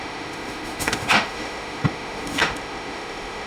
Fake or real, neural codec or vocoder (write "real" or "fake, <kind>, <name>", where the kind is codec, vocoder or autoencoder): fake, autoencoder, DAC-VAE